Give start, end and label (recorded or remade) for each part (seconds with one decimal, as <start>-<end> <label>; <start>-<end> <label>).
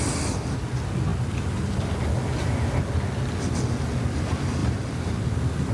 0.0-1.1 recorded; 1.1-1.9 remade; 1.9-4.6 recorded; 4.6-5.7 remade